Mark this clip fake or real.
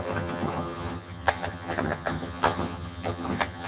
fake